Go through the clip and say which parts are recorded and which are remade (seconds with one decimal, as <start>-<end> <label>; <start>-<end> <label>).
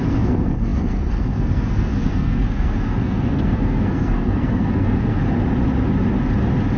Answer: 0.0-5.2 remade; 5.2-6.8 recorded